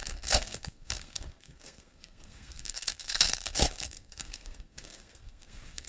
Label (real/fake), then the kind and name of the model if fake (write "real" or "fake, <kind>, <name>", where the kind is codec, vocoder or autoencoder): fake, codec, SNAC